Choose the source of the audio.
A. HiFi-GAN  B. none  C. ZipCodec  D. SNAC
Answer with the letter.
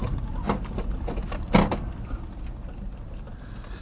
B